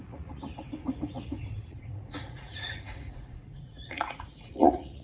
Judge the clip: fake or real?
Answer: fake